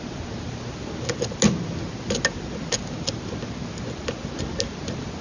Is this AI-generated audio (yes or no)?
no